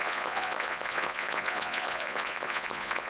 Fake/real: fake